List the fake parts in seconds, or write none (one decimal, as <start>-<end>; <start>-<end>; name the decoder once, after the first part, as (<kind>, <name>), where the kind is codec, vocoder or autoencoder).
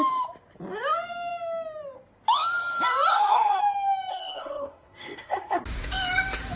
3.1-3.6 (codec, SNAC); 4.1-5.6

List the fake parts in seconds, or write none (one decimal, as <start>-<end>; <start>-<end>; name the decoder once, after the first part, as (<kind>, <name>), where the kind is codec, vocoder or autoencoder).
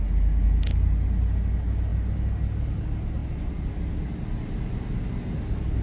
none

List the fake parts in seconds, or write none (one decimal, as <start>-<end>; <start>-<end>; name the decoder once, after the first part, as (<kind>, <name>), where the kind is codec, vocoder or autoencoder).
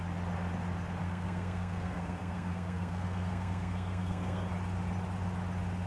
1.0-4.5 (codec, SNAC)